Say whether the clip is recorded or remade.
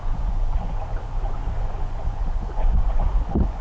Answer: remade